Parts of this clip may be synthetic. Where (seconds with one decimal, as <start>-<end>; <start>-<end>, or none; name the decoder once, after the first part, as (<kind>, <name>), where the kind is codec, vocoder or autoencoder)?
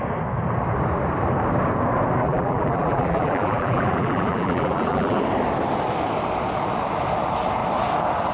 2.2-5.2 (vocoder, BigVGAN v2)